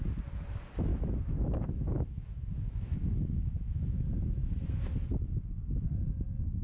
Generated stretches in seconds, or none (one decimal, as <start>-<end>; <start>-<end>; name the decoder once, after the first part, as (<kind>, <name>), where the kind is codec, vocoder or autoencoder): 0.9-4.9 (autoencoder, DAC-VAE)